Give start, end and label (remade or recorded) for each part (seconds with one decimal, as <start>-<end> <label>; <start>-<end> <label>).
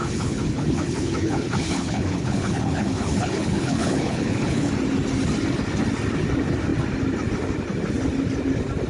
0.0-4.7 remade; 4.7-8.9 recorded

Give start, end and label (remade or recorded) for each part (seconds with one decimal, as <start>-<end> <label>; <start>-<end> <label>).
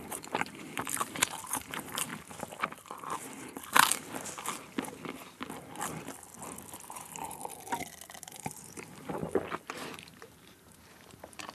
0.0-2.1 remade; 2.1-6.8 recorded; 6.8-7.4 remade; 7.4-8.2 recorded; 8.2-9.2 remade; 9.2-10.0 recorded; 10.0-11.5 remade